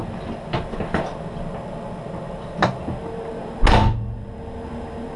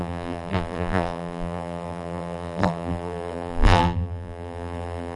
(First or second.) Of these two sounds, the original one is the first